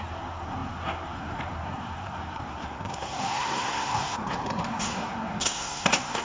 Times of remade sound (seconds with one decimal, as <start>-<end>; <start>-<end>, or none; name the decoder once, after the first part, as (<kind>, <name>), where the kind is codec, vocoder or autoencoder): 0.0-6.2 (codec, SNAC)